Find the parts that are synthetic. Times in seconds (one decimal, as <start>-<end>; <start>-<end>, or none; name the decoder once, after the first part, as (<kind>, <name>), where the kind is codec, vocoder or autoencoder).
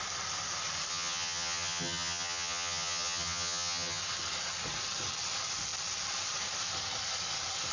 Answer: 0.9-4.0 (vocoder, HiFi-GAN)